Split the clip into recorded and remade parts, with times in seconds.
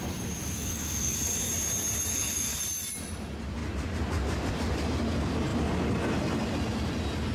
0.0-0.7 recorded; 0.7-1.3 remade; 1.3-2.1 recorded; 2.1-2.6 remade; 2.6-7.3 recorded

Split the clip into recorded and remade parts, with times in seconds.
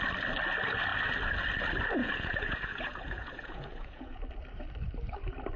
0.0-2.0 recorded; 2.0-4.2 remade; 4.2-5.6 recorded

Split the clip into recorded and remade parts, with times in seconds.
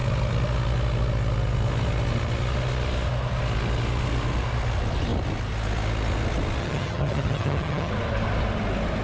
0.0-6.6 recorded; 6.6-7.9 remade; 7.9-9.0 recorded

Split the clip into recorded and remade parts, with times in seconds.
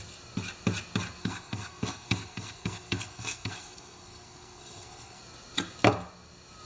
0.0-1.2 recorded; 1.2-5.2 remade; 5.2-6.7 recorded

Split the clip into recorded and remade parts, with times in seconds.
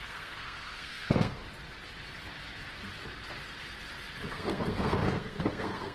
0.0-1.4 remade; 1.4-4.3 recorded; 4.3-5.9 remade